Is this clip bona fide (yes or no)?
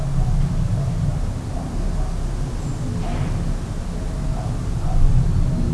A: yes